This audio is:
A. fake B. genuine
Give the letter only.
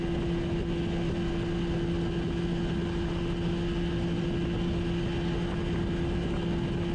B